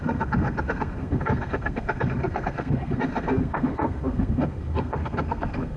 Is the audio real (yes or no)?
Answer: no